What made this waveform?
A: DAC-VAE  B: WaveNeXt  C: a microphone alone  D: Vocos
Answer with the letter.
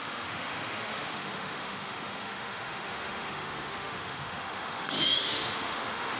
A